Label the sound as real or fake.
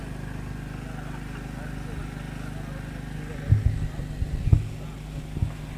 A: real